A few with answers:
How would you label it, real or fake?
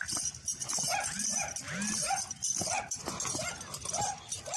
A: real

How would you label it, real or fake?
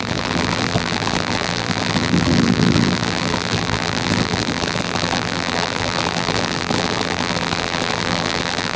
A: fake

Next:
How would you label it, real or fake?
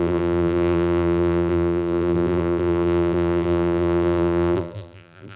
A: fake